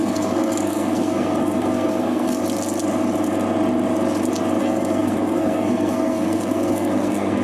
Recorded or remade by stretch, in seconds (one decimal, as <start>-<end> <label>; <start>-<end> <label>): 0.0-2.4 remade; 2.4-4.6 recorded; 4.6-7.4 remade